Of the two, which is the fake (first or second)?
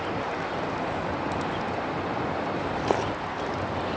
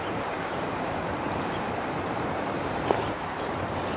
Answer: second